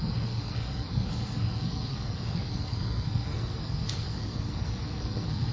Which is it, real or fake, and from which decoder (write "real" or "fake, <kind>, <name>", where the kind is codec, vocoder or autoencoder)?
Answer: fake, codec, SNAC